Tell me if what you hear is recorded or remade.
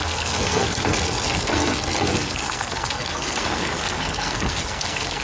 remade